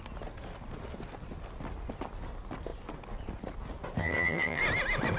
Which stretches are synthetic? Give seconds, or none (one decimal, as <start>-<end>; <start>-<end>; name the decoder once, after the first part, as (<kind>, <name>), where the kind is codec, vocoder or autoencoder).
4.0-4.6 (vocoder, HiFi-GAN)